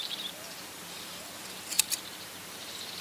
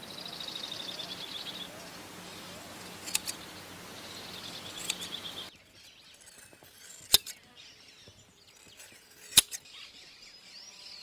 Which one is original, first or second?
second